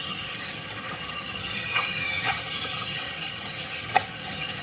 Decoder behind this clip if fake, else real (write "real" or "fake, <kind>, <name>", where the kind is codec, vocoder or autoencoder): fake, vocoder, HiFi-GAN